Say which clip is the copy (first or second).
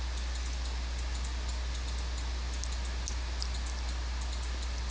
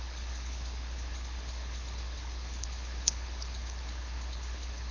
second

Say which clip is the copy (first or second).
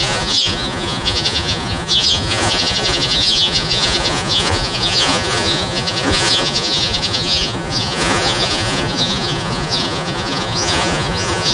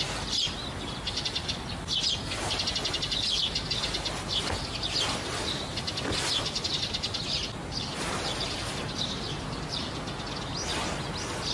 first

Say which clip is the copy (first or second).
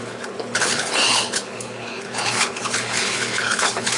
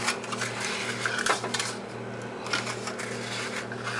first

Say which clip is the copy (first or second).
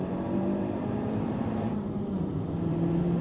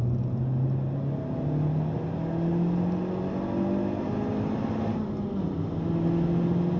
first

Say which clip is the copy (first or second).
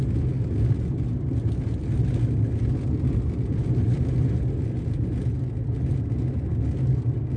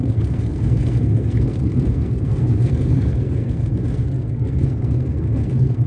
second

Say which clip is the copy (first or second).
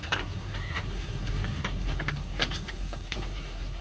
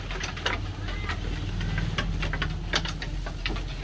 first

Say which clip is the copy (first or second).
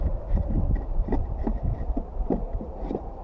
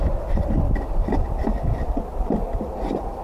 first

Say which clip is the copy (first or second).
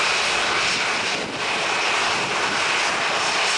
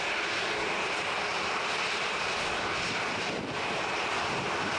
second